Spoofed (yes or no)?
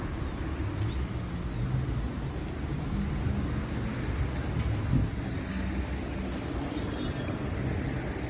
no